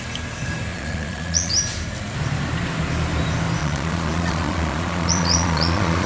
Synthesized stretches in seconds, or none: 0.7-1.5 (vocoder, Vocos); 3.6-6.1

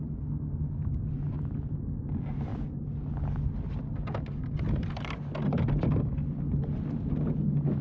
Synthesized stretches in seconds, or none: none